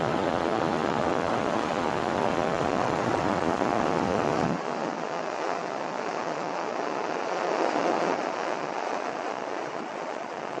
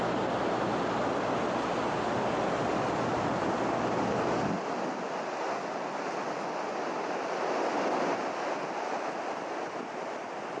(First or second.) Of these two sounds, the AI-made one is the first